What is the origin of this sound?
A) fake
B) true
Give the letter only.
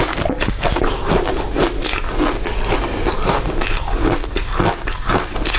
B